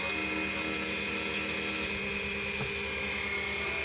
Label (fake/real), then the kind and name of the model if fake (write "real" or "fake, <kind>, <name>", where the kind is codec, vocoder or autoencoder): real